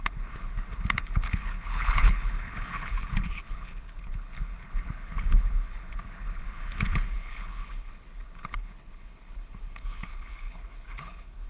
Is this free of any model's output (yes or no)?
no